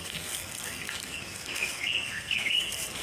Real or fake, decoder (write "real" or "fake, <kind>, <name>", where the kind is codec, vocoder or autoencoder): fake, codec, SNAC